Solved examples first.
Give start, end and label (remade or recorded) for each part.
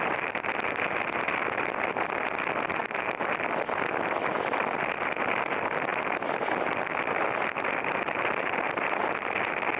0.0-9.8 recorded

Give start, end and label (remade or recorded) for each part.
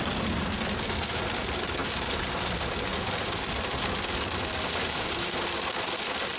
0.0-1.8 recorded; 1.8-2.3 remade; 2.3-4.8 recorded; 4.8-5.6 remade; 5.6-6.4 recorded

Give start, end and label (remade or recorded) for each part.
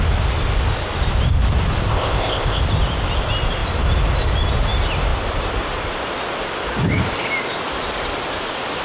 0.0-1.9 recorded; 1.9-2.6 remade; 2.6-8.8 recorded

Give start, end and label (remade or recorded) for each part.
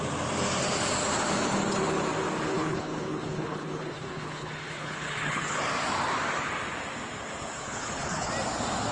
0.0-2.5 recorded; 2.5-5.6 remade; 5.6-7.5 recorded; 7.5-8.3 remade; 8.3-8.9 recorded